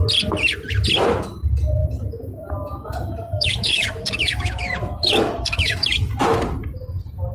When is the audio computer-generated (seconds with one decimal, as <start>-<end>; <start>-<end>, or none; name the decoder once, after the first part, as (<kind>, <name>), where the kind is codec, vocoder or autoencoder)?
1.8-6.2 (autoencoder, DAC-VAE)